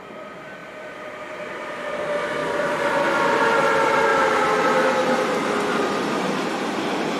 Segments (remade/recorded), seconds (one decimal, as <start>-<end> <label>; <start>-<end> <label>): 0.0-0.6 recorded; 0.6-1.7 remade; 1.7-2.4 recorded; 2.4-2.9 remade; 2.9-4.1 recorded; 4.1-6.8 remade; 6.8-7.2 recorded